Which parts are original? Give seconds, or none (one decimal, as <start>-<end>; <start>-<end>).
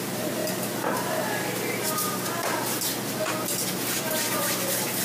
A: 0.0-0.4; 1.9-5.0